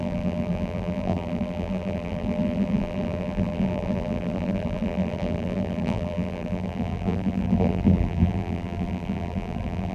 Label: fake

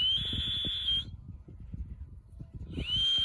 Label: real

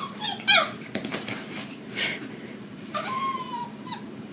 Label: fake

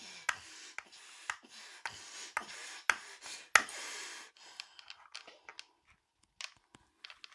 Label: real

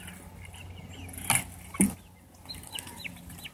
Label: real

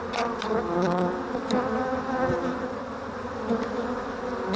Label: real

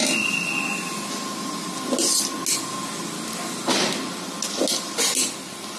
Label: real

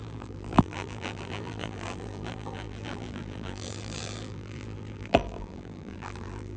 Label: fake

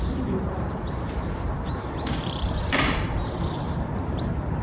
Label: fake